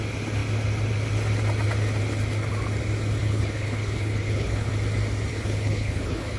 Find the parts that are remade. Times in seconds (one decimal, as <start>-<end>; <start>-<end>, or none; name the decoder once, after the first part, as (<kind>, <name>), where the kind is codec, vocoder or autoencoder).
3.2-4.7 (codec, HILCodec); 5.3-6.4